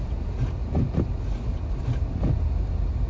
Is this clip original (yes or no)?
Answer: yes